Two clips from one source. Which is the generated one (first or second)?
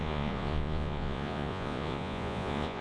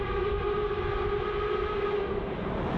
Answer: first